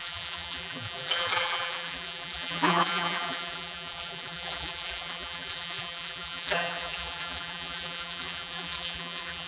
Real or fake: fake